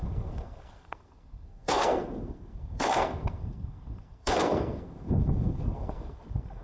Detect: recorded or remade remade